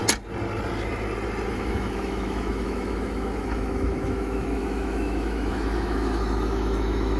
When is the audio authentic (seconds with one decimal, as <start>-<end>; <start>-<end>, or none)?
0.0-1.5